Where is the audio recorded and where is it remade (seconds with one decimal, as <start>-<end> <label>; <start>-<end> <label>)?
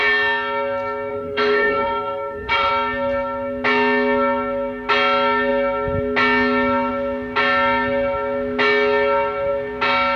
0.0-1.1 recorded; 1.1-2.7 remade; 2.7-10.2 recorded